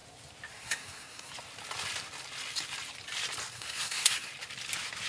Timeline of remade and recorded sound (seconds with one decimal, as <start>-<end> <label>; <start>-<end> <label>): 0.0-0.5 recorded; 0.5-1.3 remade; 1.3-3.5 recorded; 3.5-4.3 remade; 4.3-5.1 recorded